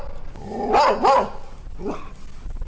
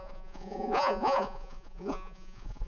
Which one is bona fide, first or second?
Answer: first